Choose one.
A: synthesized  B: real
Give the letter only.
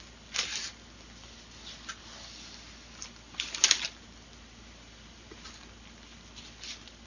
B